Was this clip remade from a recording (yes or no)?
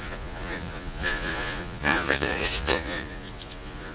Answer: yes